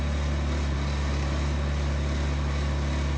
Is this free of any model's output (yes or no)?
yes